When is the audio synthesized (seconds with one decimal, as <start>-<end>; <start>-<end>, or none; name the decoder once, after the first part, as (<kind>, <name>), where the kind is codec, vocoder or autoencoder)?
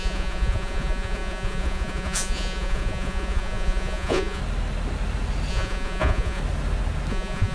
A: 0.0-4.4 (vocoder, Vocos); 5.5-6.4; 7.1-7.5